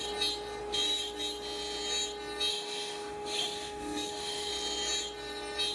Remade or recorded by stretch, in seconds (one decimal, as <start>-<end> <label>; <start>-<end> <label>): 0.0-2.5 recorded; 2.5-4.5 remade; 4.5-5.7 recorded